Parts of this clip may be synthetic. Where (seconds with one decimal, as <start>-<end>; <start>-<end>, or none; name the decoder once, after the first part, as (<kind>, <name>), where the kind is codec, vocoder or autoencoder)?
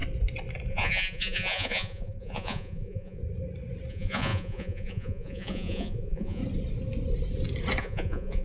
0.7-3.2 (vocoder, Vocos); 3.9-6.4; 7.8-8.4